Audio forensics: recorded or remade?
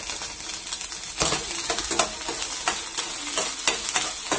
recorded